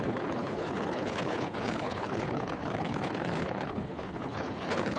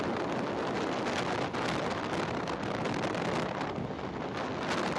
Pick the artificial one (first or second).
first